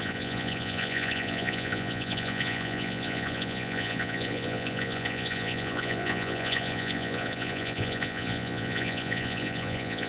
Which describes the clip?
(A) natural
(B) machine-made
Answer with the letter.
B